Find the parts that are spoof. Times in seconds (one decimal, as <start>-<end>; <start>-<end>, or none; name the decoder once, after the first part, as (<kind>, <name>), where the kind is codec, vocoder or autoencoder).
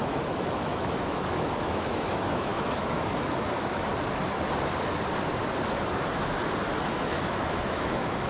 0.0-3.9 (autoencoder, DAC-VAE); 6.9-8.3